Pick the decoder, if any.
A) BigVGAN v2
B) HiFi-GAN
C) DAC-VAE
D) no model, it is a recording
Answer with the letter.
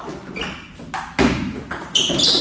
D